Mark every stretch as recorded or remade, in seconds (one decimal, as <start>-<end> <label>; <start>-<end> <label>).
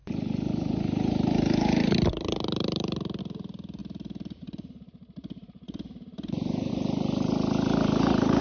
0.0-3.2 remade; 3.2-3.8 recorded; 3.8-6.7 remade; 6.7-8.4 recorded